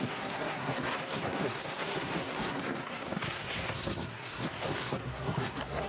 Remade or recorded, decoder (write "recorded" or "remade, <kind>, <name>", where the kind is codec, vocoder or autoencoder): remade, codec, SNAC